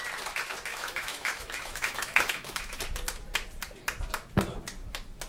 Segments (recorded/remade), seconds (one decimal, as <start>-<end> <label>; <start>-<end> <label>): 0.0-0.7 recorded; 0.7-2.8 remade; 2.8-5.3 recorded